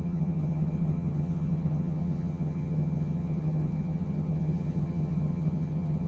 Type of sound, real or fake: fake